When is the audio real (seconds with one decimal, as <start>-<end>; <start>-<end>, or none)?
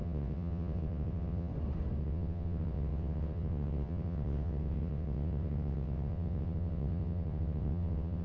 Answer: 1.5-2.0